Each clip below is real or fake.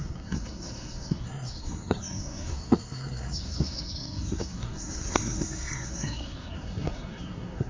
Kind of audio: fake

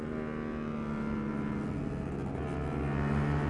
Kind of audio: real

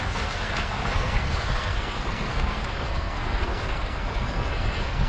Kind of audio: fake